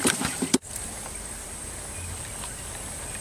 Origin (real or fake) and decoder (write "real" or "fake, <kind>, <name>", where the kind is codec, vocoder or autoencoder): fake, vocoder, BigVGAN v2